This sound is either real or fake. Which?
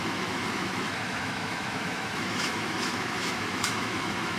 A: fake